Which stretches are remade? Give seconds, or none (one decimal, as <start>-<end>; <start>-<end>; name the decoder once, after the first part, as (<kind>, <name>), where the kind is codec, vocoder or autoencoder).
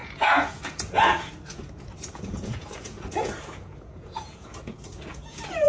0.0-5.7 (vocoder, Vocos)